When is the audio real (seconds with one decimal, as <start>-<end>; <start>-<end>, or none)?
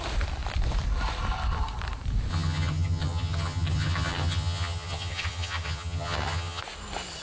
0.0-2.3; 6.6-7.2